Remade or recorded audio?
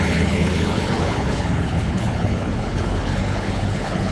remade